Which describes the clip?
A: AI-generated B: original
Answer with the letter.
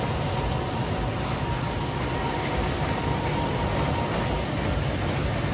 B